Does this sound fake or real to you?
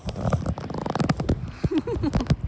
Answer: real